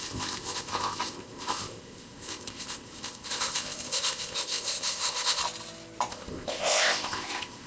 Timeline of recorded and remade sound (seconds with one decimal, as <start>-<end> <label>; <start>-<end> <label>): 0.0-5.4 remade; 5.4-6.1 recorded; 6.1-7.7 remade